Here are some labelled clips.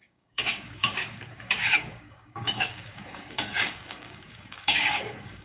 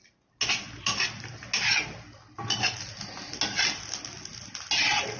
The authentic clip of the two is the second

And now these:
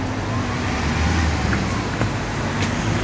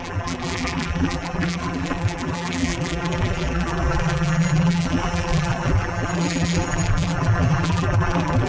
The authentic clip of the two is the first